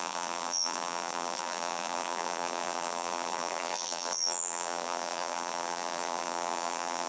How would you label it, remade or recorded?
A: remade